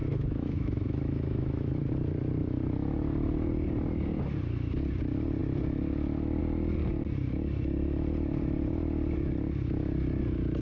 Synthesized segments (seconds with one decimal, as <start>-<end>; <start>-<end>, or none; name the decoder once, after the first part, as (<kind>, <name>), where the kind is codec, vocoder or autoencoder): 0.0-1.9 (autoencoder, DAC-VAE)